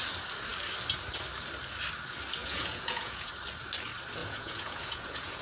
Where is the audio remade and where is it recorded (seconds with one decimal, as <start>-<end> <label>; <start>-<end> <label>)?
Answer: 0.0-2.4 recorded; 2.4-3.3 remade; 3.3-4.2 recorded; 4.2-5.4 remade